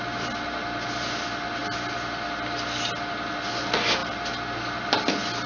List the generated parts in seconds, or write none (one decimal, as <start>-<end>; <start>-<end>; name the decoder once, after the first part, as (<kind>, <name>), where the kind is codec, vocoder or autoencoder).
none